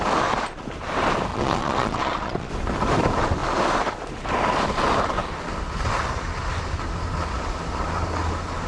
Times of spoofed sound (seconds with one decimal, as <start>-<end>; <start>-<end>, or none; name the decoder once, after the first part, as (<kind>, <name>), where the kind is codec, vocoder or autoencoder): 1.3-2.5 (vocoder, Vocos)